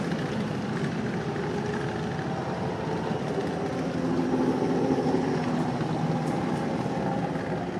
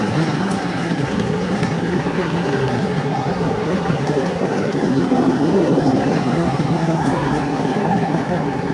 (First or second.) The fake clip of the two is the second